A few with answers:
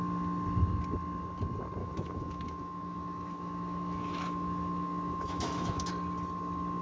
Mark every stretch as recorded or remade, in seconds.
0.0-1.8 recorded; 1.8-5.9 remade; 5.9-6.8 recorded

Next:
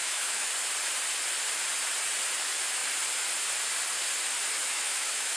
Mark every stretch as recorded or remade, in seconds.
0.0-0.5 remade; 0.5-4.6 recorded; 4.6-5.4 remade

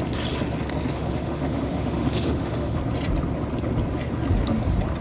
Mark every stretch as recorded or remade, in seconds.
0.0-0.9 recorded; 0.9-2.8 remade; 2.8-5.0 recorded